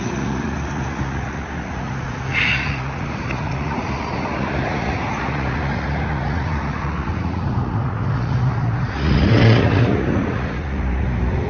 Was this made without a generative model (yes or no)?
no